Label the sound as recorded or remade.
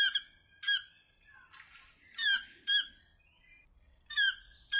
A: recorded